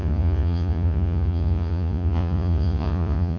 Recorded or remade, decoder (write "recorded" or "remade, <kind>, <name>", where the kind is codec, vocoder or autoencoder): remade, vocoder, Vocos